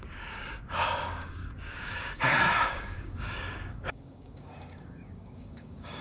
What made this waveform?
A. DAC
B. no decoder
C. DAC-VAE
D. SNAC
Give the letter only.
A